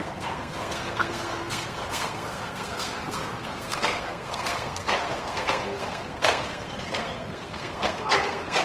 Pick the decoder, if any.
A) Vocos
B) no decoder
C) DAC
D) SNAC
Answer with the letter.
D